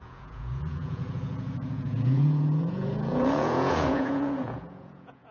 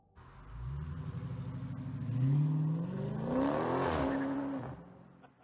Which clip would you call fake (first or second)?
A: first